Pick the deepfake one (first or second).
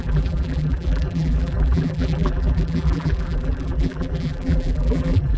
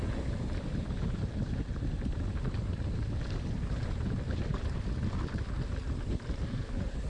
first